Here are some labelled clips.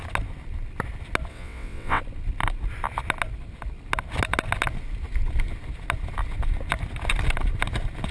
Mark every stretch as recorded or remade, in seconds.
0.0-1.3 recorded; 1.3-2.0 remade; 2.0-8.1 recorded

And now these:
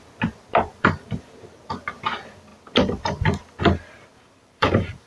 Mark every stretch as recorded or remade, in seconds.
0.0-0.7 recorded; 0.7-1.3 remade; 1.3-4.1 recorded; 4.1-5.1 remade